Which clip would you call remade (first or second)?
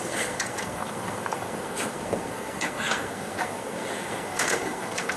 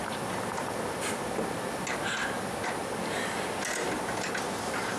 first